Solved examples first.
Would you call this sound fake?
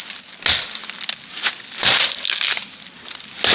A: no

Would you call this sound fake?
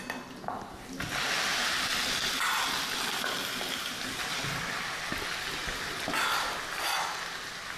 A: no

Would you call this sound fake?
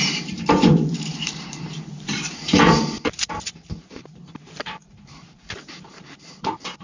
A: yes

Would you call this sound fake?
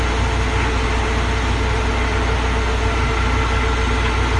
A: no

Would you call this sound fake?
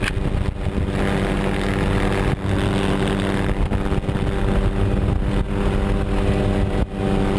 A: no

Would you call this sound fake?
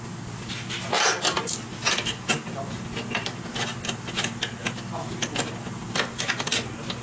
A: no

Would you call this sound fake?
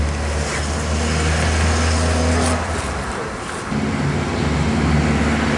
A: no